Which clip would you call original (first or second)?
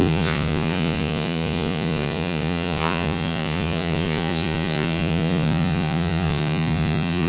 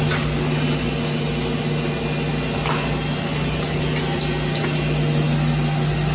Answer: second